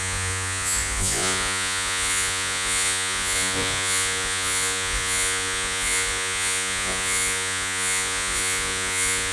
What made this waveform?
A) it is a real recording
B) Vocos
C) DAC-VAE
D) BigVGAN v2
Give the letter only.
B